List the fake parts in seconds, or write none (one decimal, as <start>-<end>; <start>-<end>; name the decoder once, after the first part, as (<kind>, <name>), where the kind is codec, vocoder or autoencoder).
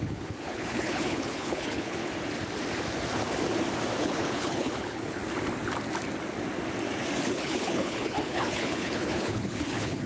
0.0-2.0 (codec, HILCodec); 4.0-5.2; 7.3-10.1